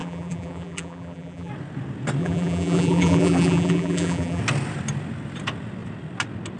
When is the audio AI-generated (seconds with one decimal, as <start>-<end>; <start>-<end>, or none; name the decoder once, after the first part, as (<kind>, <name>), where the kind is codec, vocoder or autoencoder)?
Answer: 0.0-1.5 (vocoder, BigVGAN v2); 2.2-4.4